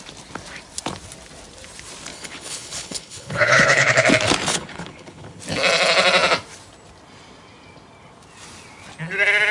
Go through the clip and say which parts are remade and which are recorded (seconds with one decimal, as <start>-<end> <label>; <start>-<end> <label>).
0.0-2.1 recorded; 2.1-4.1 remade; 4.1-4.5 recorded; 4.5-5.4 remade; 5.4-9.5 recorded